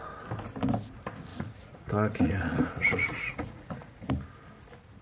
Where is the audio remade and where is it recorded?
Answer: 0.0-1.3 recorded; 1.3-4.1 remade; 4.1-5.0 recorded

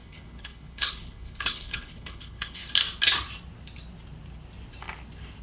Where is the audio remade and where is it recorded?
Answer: 0.0-2.6 remade; 2.6-5.4 recorded